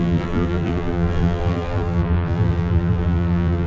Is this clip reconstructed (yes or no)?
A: yes